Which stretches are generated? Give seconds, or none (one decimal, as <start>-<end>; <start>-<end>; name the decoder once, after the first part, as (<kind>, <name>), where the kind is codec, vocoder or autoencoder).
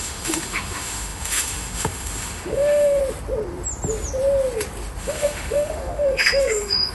0.0-3.0 (autoencoder, DAC-VAE); 5.0-6.9